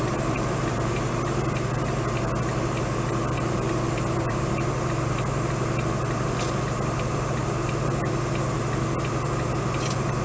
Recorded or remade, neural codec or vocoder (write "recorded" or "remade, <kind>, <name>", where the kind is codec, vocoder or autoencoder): recorded